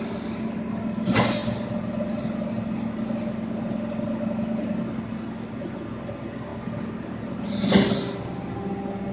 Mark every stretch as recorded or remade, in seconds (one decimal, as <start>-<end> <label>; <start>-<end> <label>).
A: 0.0-9.1 recorded